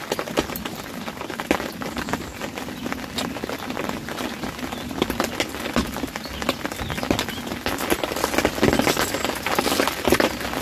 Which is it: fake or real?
real